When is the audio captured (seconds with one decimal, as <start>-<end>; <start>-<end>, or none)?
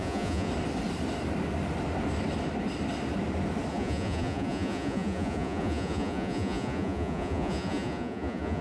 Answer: 0.5-3.7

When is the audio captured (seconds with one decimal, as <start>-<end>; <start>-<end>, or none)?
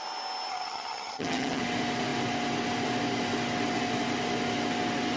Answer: 0.0-0.5; 1.6-5.2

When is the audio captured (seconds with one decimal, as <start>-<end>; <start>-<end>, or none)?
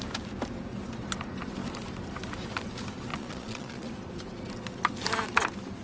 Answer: 0.0-3.1; 3.9-5.8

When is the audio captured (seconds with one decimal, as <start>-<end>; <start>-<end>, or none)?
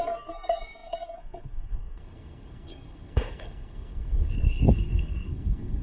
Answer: none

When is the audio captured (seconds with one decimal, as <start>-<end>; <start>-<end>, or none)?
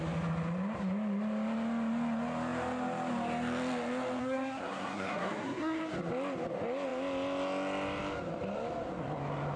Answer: 0.0-4.2; 5.8-9.6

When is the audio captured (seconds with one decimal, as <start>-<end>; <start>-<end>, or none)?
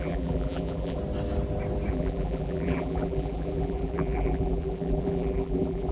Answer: 1.0-1.9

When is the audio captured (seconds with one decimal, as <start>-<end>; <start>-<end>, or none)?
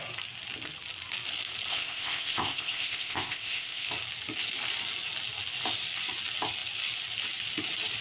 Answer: 0.0-1.7; 3.9-8.0